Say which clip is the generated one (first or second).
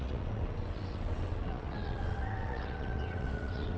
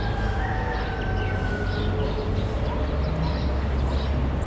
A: first